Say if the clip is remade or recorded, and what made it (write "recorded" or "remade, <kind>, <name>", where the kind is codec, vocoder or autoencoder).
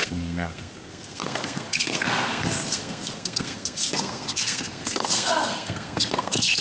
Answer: remade, codec, SNAC